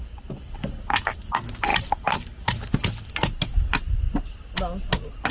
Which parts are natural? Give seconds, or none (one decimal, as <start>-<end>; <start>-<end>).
0.0-5.3